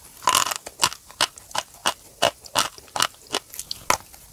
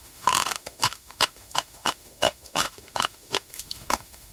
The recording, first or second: first